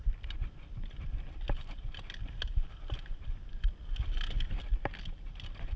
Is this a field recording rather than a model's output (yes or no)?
yes